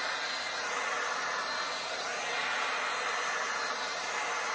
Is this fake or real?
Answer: real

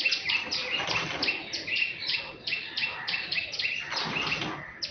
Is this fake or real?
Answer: real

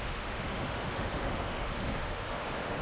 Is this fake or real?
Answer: fake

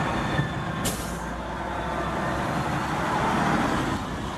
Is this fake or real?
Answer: real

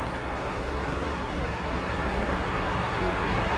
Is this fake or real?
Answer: fake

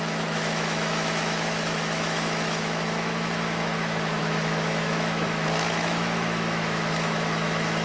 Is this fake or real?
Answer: fake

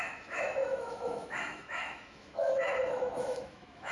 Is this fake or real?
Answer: fake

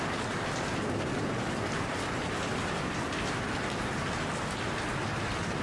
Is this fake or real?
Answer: real